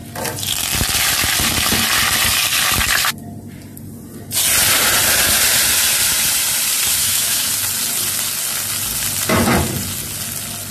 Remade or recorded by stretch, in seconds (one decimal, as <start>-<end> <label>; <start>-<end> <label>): 0.0-7.0 recorded; 7.0-7.5 remade; 7.5-10.7 recorded